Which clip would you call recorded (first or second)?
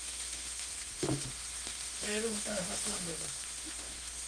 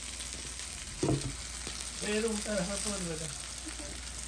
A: second